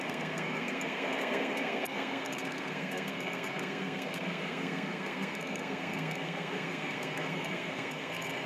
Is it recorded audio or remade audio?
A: remade